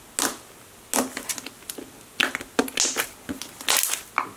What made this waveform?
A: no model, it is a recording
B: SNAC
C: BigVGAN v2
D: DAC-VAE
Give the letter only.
A